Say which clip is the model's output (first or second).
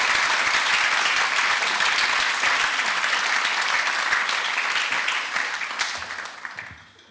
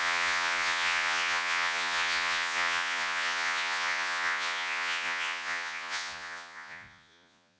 second